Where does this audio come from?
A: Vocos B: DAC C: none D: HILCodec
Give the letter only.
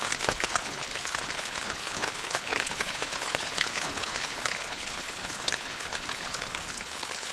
D